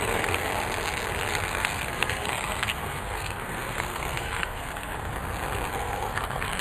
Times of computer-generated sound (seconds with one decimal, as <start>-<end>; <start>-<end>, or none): 0.0-0.5; 1.5-5.1; 5.7-6.6